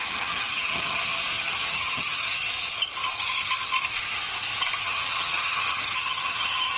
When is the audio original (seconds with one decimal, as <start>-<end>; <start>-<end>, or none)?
1.0-1.5; 2.4-4.8